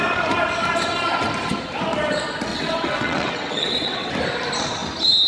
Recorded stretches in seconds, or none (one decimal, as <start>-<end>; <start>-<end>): 0.0-2.5; 4.1-5.3